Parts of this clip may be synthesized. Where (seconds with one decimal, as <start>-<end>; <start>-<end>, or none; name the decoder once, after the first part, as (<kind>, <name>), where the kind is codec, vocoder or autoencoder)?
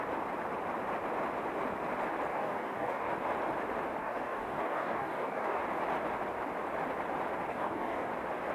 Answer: 2.3-3.1 (codec, DAC); 4.0-5.6; 7.5-8.1